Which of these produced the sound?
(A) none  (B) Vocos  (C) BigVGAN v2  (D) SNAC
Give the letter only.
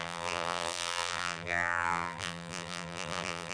C